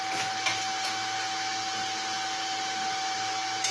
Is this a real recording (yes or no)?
yes